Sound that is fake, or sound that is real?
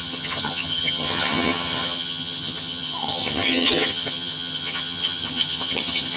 fake